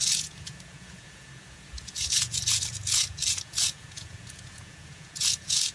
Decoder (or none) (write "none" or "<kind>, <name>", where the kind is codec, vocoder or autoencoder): vocoder, Vocos